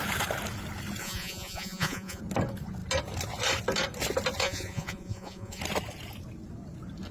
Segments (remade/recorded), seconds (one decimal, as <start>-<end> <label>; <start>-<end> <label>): 0.0-1.0 recorded; 1.0-2.2 remade; 2.2-4.4 recorded; 4.4-5.6 remade; 5.6-7.1 recorded

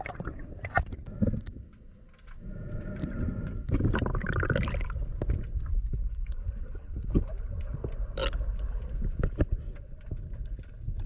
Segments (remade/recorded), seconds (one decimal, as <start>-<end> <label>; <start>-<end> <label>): 0.0-5.7 recorded; 5.7-7.3 remade; 7.3-11.1 recorded

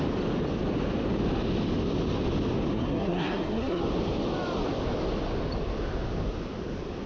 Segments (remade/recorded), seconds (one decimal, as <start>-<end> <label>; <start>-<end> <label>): 0.0-2.7 recorded; 2.7-3.8 remade; 3.8-7.1 recorded

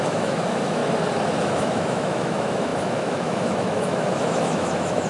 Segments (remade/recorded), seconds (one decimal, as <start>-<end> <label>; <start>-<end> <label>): 0.0-0.8 remade; 0.8-1.4 recorded; 1.4-5.1 remade